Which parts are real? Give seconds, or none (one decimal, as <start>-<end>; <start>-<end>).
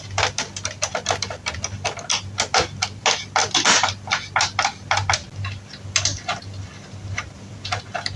0.0-8.2